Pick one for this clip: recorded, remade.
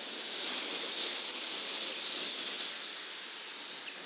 recorded